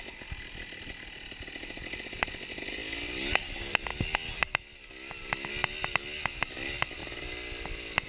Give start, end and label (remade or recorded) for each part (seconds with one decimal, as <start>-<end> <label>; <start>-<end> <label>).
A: 0.0-8.1 recorded